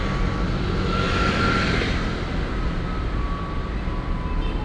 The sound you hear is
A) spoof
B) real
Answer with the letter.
B